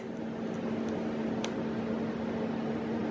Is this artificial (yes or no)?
no